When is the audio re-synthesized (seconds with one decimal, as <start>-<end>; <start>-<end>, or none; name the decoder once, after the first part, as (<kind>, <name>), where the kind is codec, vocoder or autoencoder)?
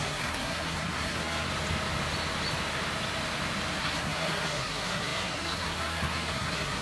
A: 0.0-1.5 (codec, SNAC); 3.8-6.8